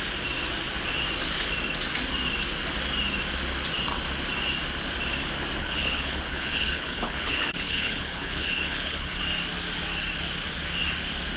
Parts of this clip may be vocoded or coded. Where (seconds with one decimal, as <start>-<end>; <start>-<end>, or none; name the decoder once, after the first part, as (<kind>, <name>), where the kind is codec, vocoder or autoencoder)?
5.6-9.2 (codec, HILCodec)